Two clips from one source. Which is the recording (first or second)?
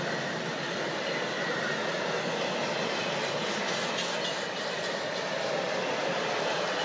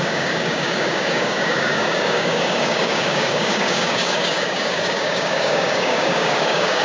first